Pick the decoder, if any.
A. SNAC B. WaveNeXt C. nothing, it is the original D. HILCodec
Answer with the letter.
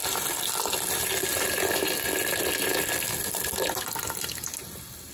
C